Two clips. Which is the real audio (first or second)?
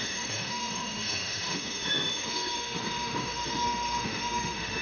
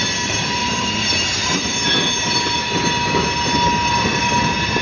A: second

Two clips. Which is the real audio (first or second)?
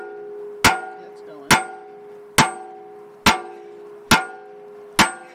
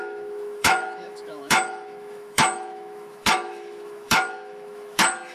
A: first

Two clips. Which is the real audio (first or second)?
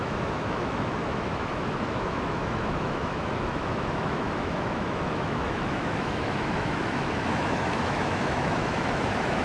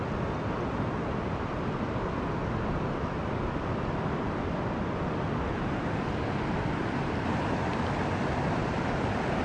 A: second